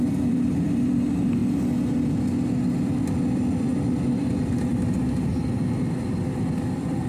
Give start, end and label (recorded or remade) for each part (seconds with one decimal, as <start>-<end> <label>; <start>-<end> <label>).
0.0-1.4 remade; 1.4-3.0 recorded; 3.0-7.1 remade